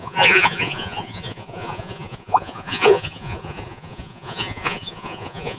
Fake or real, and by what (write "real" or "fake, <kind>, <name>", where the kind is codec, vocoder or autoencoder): fake, vocoder, Vocos